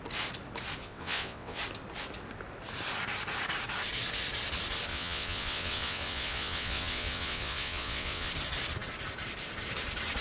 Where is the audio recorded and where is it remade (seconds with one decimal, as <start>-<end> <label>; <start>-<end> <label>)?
0.0-0.8 recorded; 0.8-1.6 remade; 1.6-4.9 recorded; 4.9-8.3 remade; 8.3-10.2 recorded